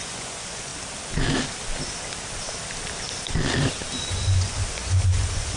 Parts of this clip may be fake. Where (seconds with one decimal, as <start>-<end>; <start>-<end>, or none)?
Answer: 0.0-0.7; 4.1-5.6